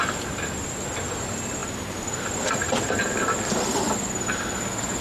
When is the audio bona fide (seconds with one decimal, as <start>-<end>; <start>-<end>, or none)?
0.0-1.6; 2.2-2.6; 3.1-5.0